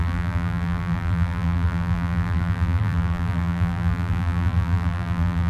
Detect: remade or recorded remade